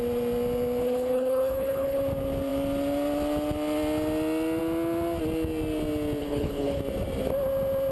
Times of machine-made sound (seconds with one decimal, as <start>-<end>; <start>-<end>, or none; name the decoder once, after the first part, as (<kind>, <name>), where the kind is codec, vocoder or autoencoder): 0.8-2.0 (codec, HILCodec); 6.2-6.8